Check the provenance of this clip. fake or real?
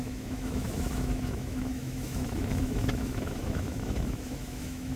fake